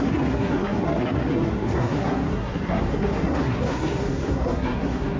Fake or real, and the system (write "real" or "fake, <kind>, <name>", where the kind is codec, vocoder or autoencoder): fake, codec, SNAC